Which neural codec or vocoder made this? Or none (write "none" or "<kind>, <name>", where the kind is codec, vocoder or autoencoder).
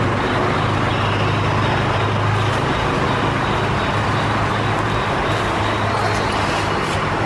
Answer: none